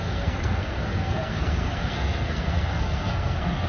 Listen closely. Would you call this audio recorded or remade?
remade